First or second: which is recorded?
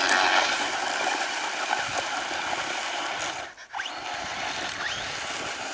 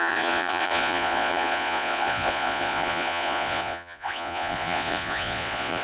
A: first